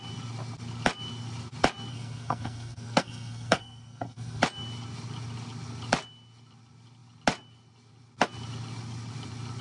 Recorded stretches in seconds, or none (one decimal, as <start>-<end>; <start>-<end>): 0.0-1.9; 4.4-9.6